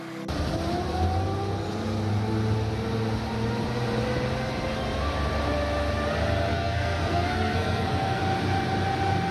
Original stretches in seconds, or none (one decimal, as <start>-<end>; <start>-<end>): 0.0-6.5; 8.2-9.3